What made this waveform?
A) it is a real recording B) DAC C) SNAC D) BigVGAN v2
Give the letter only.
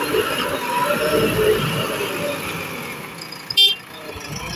A